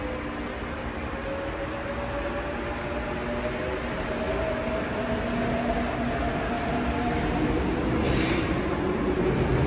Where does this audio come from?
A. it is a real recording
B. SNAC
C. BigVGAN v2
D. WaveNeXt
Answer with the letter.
A